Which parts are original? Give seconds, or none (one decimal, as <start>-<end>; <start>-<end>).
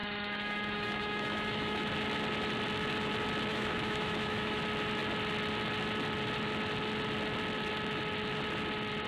1.9-3.5; 4.6-9.1